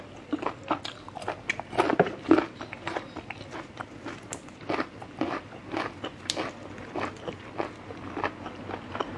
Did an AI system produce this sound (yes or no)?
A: no